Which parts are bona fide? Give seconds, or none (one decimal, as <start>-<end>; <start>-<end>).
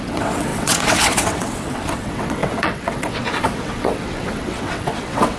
none